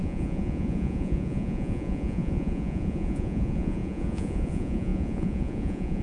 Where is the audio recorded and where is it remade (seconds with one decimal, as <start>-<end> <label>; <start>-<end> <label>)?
0.0-6.0 remade